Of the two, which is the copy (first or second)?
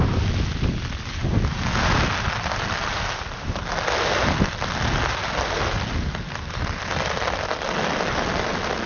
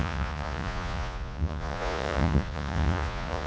second